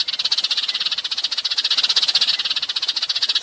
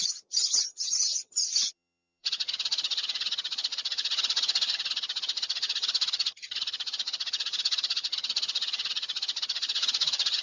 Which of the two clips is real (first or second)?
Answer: first